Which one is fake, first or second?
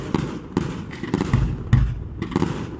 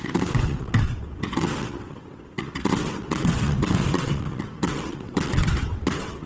second